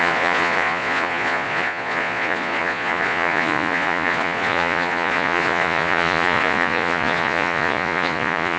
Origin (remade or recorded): remade